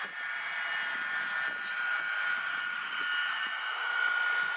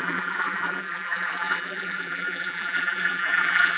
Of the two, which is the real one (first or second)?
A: first